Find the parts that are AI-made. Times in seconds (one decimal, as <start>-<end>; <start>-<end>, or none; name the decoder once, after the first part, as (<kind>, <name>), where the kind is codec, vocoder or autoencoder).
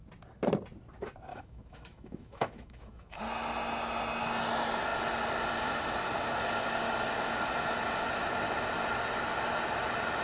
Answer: 1.3-3.2 (autoencoder, DAC-VAE)